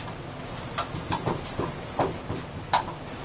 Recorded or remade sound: recorded